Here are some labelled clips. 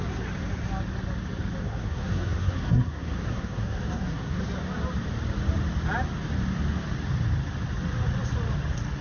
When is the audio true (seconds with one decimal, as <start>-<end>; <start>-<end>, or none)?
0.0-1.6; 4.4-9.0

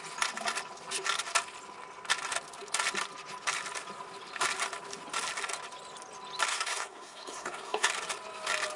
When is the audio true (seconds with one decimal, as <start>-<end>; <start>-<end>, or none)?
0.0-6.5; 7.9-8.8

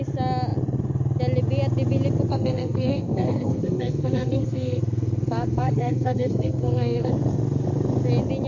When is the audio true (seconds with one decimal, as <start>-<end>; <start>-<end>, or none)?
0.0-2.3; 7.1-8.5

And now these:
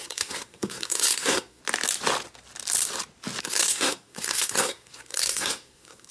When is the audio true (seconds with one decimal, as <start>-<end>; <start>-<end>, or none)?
1.6-3.4